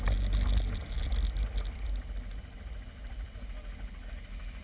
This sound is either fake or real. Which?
real